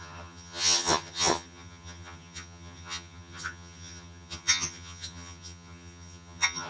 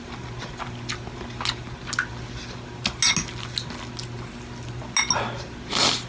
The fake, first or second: first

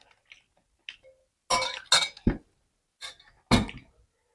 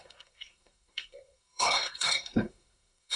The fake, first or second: second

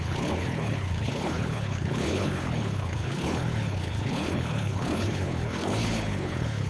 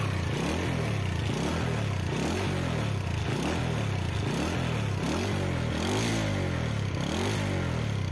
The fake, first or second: first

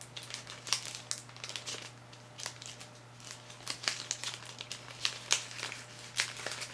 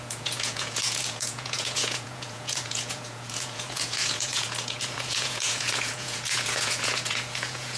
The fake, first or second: second